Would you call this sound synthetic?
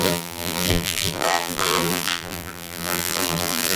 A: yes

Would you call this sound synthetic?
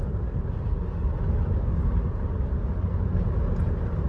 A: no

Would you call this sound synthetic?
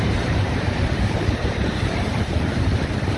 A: yes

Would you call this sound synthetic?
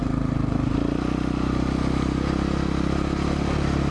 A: no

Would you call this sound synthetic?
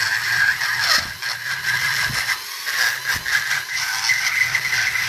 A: no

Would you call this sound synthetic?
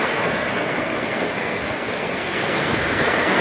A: yes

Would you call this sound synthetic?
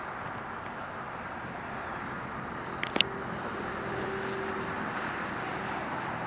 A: no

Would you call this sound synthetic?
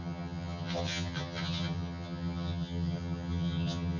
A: yes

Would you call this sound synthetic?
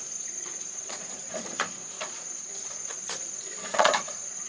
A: yes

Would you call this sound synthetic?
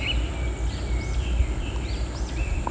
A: no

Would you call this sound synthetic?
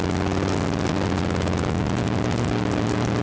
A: no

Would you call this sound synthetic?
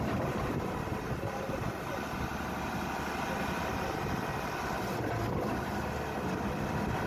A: no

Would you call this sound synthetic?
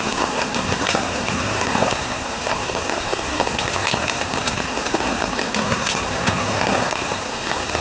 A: yes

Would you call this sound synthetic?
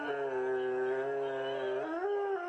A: no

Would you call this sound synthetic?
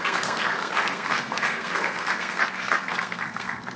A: yes